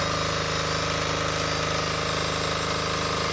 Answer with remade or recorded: recorded